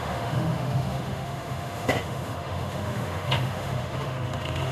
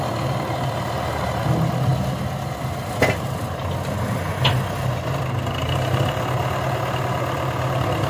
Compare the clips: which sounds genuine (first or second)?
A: second